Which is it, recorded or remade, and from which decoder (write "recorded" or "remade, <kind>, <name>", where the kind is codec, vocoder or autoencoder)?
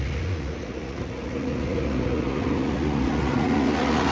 remade, vocoder, Vocos